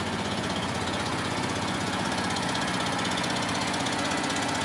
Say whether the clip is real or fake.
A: fake